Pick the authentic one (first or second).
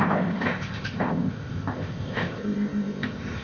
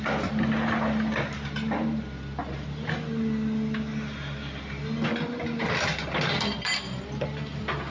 second